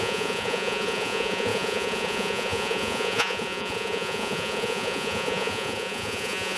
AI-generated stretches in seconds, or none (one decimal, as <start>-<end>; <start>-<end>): 0.0-6.6

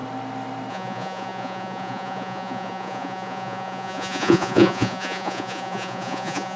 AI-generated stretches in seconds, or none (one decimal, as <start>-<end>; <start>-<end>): 0.7-6.6

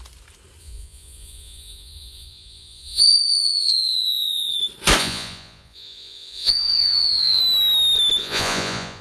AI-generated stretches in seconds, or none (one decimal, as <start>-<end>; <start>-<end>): 0.6-4.6; 5.0-7.4; 8.2-9.0

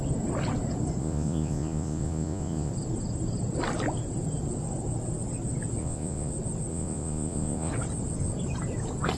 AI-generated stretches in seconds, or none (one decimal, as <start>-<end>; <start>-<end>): 1.0-2.7; 5.8-6.3; 6.7-7.7

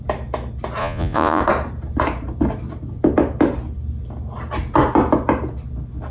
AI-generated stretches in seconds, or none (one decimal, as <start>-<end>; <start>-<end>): 0.8-1.4

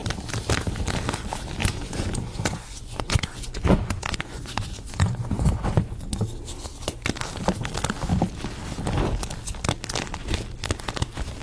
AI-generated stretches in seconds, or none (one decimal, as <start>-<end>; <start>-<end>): 1.6-6.2

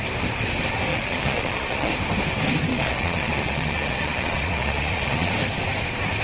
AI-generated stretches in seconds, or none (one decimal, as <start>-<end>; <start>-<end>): 0.9-1.9; 2.7-5.3

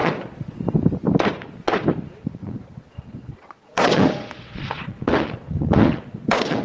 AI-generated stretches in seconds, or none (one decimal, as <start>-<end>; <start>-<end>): 0.0-0.6; 2.4-6.6